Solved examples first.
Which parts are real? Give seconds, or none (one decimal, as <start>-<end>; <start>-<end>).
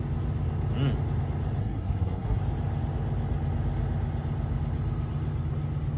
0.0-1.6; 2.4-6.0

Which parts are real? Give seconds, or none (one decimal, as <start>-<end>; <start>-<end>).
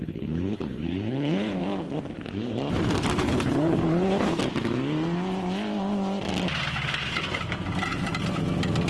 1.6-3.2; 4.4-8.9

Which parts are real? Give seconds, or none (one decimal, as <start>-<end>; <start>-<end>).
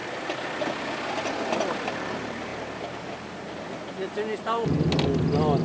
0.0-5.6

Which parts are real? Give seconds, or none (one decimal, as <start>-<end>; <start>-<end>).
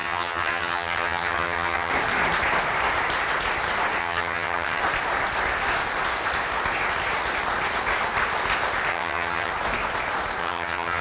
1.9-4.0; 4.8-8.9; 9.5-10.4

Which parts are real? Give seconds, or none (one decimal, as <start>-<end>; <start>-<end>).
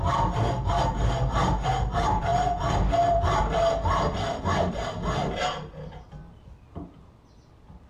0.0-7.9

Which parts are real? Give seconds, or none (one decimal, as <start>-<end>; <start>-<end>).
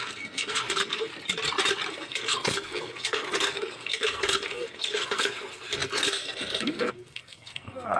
1.1-1.9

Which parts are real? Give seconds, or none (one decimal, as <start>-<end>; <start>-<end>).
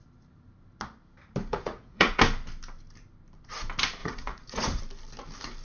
0.0-1.5; 2.2-4.0; 4.8-5.6